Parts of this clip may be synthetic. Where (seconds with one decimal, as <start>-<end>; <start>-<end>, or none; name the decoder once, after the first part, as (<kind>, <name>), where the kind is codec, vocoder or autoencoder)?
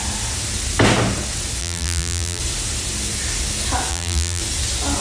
1.6-2.4 (vocoder, BigVGAN v2); 3.9-4.4